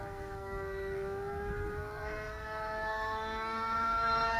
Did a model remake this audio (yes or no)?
yes